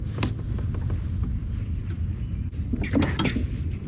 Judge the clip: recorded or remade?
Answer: recorded